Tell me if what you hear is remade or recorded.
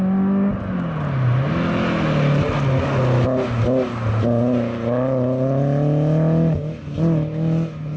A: recorded